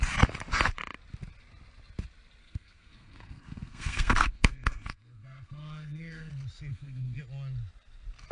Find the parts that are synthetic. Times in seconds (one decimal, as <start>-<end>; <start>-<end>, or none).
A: 2.4-6.3; 6.7-7.2